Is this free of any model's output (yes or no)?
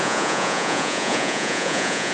no